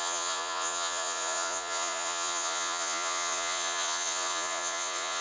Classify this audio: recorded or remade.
remade